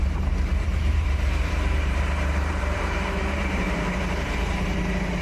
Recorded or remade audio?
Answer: remade